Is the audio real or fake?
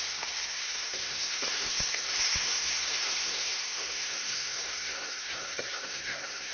fake